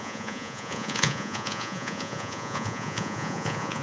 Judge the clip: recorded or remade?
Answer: remade